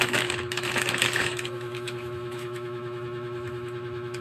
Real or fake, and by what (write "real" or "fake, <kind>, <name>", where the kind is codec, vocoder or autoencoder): fake, autoencoder, DAC-VAE